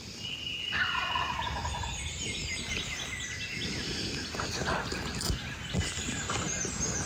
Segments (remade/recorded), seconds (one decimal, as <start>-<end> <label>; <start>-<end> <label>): 0.0-7.1 recorded